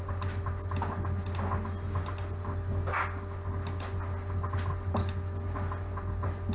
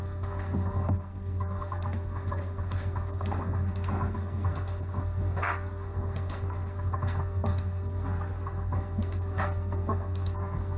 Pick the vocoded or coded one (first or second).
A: second